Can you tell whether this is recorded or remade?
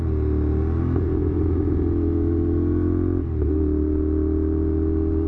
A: recorded